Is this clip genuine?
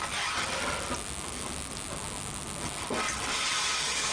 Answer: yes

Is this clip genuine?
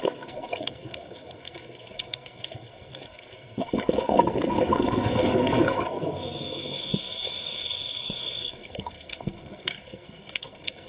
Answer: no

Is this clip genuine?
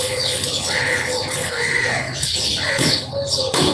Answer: no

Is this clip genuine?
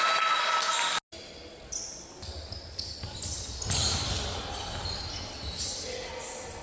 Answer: yes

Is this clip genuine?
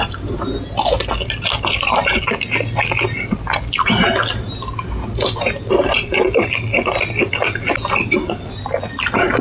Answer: yes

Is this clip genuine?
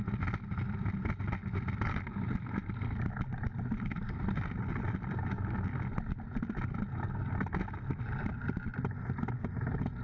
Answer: yes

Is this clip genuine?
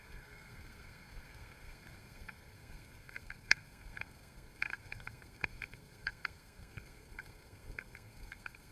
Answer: no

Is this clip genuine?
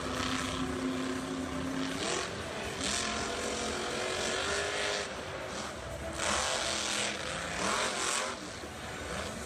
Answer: yes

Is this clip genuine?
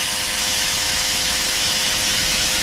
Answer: no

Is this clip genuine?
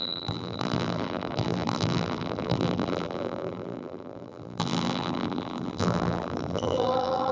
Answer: no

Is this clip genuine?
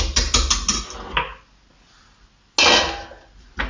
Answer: yes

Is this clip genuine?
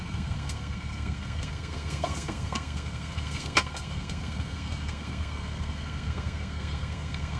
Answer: no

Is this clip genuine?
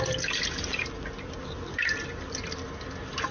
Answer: yes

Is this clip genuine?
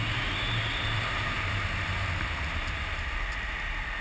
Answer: yes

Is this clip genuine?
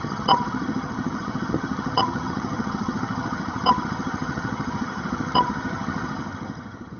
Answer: no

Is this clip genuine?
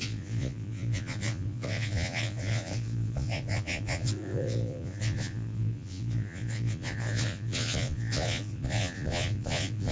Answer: no